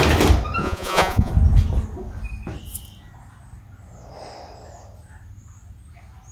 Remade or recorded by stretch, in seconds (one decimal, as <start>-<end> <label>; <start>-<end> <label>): 0.0-0.6 recorded; 0.6-1.3 remade; 1.3-6.3 recorded